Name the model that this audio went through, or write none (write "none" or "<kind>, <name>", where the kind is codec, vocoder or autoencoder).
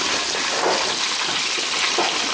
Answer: none